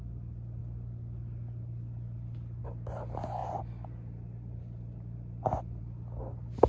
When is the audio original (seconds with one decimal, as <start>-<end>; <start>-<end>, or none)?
0.0-6.7